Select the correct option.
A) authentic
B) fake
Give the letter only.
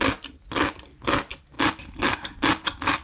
A